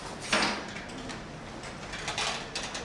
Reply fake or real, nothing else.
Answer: real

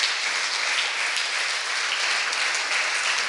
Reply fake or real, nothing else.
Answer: real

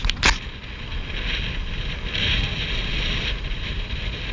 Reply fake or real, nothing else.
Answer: real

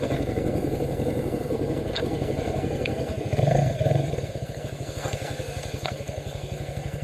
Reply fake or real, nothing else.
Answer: fake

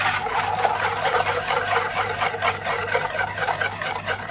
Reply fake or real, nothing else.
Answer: fake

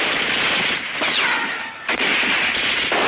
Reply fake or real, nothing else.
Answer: fake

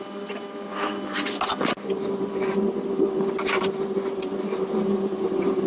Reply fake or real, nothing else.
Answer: real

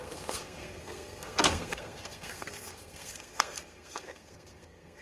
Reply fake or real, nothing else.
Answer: fake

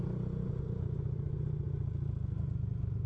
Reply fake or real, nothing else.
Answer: real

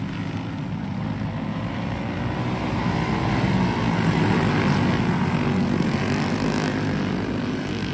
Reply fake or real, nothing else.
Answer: real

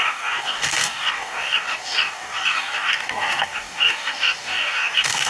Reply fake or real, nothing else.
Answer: fake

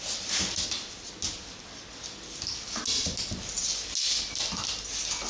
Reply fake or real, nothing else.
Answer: real